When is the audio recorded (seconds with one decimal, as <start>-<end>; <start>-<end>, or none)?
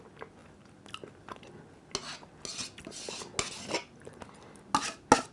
0.0-5.3